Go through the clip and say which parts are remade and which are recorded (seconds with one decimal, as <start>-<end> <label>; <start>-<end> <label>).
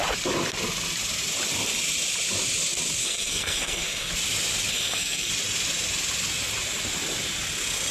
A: 0.0-3.0 recorded; 3.0-4.1 remade; 4.1-4.7 recorded; 4.7-5.3 remade; 5.3-7.9 recorded